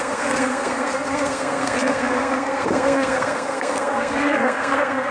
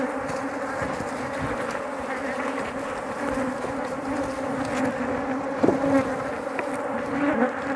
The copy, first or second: first